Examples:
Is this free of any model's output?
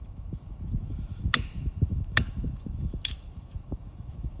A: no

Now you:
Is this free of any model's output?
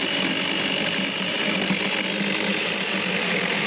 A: yes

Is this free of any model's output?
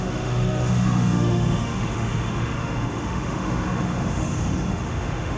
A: no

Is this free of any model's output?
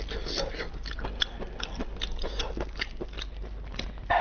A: yes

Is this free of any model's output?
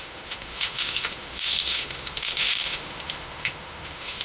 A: no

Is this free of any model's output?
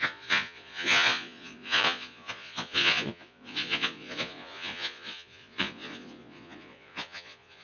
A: no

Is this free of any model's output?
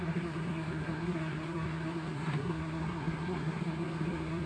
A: no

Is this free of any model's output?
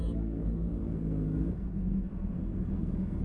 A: no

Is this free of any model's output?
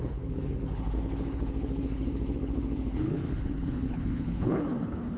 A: no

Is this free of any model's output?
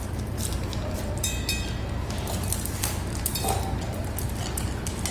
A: yes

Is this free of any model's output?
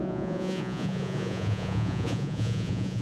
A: no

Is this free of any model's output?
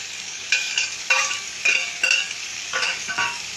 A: no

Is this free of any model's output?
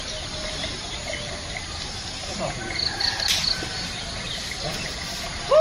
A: yes